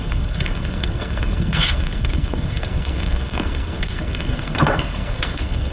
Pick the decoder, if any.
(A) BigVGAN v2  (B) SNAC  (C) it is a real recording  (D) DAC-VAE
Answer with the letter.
B